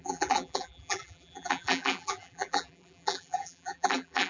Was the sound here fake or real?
fake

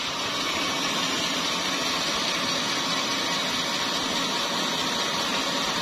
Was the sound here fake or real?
real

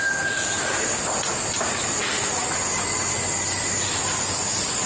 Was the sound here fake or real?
real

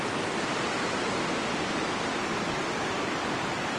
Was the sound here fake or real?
real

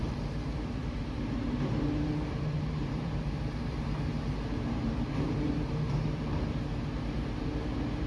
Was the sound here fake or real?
fake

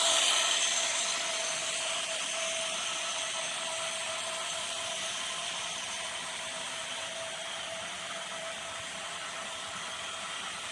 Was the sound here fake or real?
fake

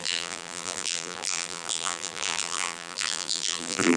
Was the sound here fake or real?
fake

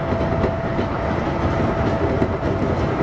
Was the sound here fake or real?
real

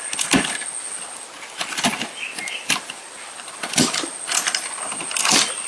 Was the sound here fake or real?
real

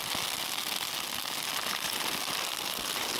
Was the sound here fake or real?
real